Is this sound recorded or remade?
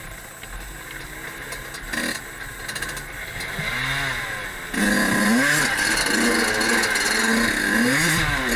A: recorded